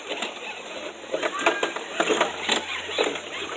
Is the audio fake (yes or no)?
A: no